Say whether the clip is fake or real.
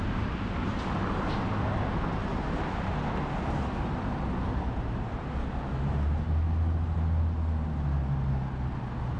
real